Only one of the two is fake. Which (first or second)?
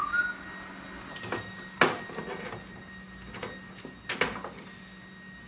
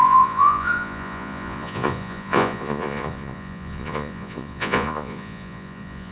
second